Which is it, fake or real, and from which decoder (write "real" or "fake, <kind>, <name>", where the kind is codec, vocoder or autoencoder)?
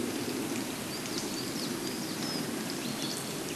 real